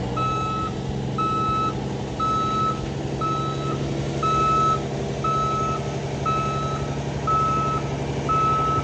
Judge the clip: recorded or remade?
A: recorded